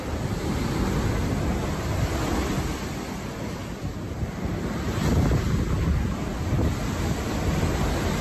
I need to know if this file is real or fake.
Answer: real